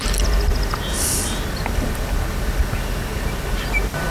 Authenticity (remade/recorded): remade